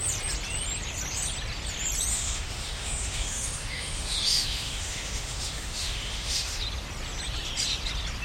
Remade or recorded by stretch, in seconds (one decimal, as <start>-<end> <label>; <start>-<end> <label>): 0.0-2.1 recorded; 2.1-6.6 remade; 6.6-8.2 recorded